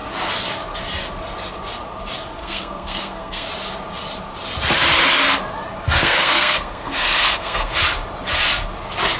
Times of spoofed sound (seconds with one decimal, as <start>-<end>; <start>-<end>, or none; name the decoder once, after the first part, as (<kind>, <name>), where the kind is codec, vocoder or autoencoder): 2.4-3.5 (codec, SNAC); 6.0-7.7